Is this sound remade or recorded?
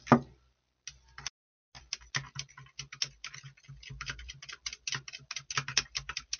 recorded